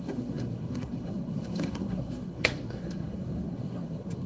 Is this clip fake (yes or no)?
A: yes